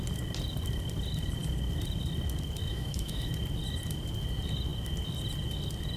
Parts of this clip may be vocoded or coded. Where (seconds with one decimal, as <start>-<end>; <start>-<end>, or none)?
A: 2.7-3.3

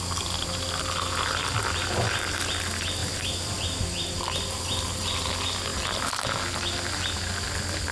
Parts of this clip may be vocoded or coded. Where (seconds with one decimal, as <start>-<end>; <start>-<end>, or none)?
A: none

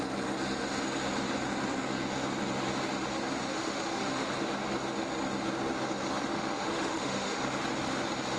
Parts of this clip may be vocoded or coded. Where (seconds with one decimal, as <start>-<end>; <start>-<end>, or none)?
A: 3.5-4.3; 6.3-7.4

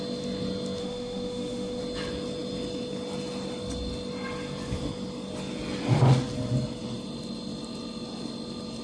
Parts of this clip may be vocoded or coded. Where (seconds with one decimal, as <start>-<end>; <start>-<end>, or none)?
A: 0.8-1.8